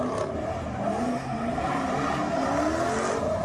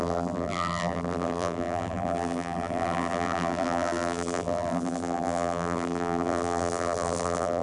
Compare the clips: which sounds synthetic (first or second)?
second